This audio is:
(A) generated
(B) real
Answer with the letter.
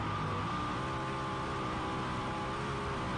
B